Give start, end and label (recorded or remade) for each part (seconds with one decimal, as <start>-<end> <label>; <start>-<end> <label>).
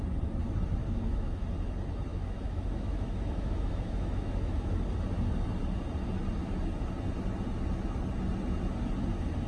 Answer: 0.0-0.8 recorded; 0.8-1.4 remade; 1.4-2.1 recorded; 2.1-4.8 remade; 4.8-9.5 recorded